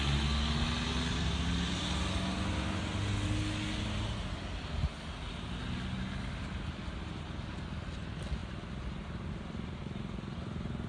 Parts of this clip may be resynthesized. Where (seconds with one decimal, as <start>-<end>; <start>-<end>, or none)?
none